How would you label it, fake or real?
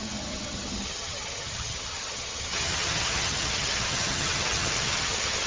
fake